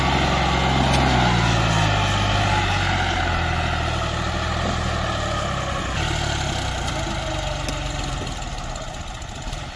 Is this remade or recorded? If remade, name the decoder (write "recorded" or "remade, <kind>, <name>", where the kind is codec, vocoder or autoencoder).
recorded